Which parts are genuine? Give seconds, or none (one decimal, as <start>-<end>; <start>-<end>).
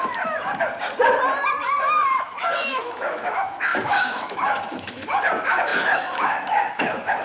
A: 0.5-1.8